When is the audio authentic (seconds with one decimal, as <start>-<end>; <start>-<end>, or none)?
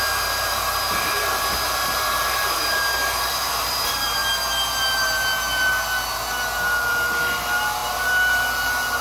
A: 4.2-6.9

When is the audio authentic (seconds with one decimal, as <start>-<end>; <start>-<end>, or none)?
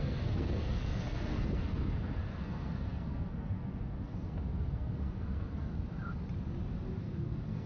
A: 5.7-7.0